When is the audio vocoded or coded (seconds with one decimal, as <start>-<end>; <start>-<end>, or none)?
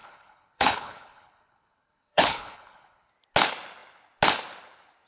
0.0-3.1